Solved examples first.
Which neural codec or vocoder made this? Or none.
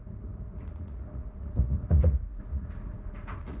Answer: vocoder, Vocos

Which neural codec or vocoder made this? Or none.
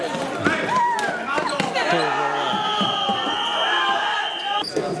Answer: none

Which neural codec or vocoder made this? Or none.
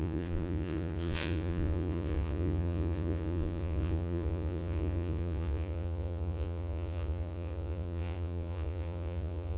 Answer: vocoder, Vocos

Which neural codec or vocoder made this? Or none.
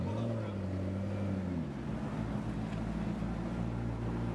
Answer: none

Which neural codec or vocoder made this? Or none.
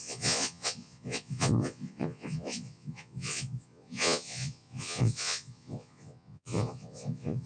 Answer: vocoder, Vocos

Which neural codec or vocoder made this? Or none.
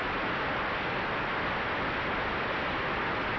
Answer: none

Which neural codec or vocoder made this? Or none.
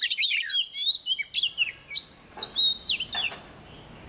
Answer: none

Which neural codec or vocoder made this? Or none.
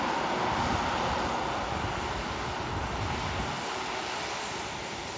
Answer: none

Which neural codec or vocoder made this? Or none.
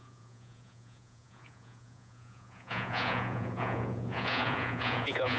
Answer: vocoder, Vocos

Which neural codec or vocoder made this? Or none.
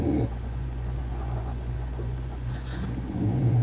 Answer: vocoder, Vocos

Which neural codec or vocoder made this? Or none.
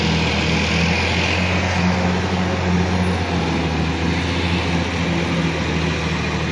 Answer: none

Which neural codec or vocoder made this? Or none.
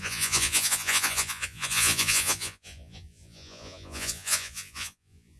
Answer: vocoder, Vocos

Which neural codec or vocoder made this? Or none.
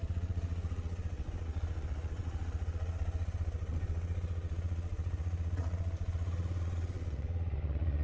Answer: vocoder, Vocos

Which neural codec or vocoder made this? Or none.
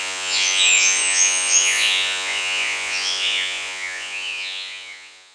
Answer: vocoder, Vocos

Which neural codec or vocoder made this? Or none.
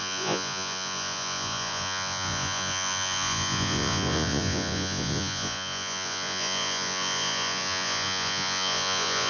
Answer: vocoder, Vocos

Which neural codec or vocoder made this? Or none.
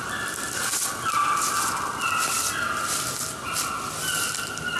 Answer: none